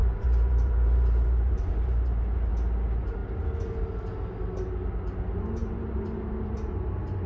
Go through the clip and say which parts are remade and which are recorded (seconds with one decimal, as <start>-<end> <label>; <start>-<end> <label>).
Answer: 0.0-2.5 remade; 2.5-5.6 recorded; 5.6-7.3 remade